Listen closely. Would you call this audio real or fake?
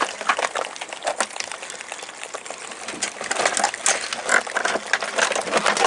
real